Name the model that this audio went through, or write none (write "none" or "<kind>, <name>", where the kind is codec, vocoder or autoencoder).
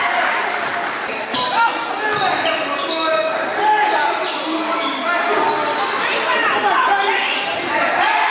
none